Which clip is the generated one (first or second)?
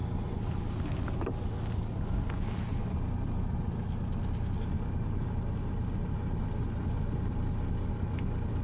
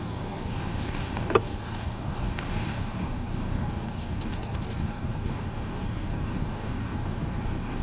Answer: second